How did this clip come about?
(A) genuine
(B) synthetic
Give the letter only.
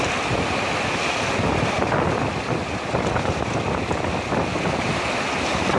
A